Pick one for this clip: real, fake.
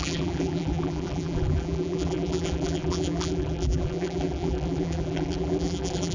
fake